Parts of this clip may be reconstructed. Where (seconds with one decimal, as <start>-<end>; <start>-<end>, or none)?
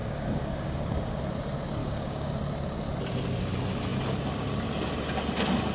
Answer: 0.0-1.2; 1.8-2.3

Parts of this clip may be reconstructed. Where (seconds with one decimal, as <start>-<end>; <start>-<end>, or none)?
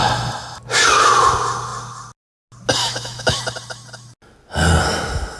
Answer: 2.8-3.4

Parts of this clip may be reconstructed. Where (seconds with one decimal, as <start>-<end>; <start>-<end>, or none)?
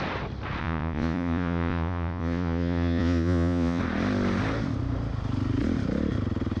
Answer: 0.6-3.8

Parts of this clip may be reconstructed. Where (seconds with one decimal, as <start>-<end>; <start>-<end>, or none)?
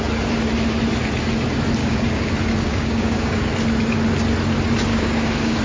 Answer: 1.8-2.3; 2.7-3.5; 4.9-5.6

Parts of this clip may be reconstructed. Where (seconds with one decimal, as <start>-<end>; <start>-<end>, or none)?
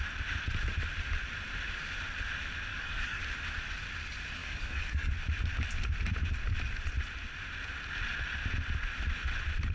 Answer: 2.7-3.2; 4.4-5.1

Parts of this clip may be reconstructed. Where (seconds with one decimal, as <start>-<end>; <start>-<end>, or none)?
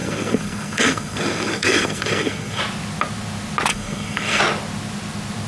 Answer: 0.0-2.6; 3.7-4.4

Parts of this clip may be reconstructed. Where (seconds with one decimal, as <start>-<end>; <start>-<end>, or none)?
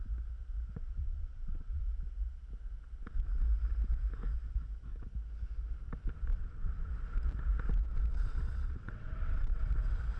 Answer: 0.8-1.8; 6.3-6.9; 8.1-9.7